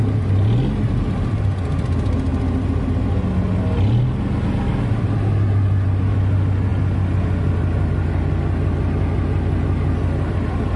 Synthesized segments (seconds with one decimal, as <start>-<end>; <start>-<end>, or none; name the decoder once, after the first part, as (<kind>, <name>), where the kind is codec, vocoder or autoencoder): none